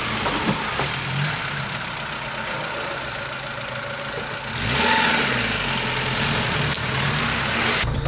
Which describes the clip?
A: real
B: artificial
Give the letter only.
A